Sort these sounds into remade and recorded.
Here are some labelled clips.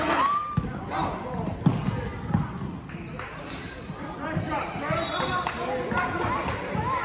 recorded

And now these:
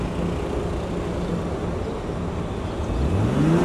recorded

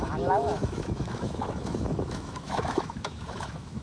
remade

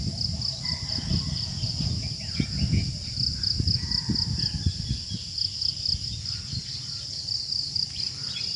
recorded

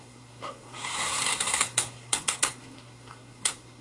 remade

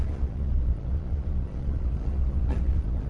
remade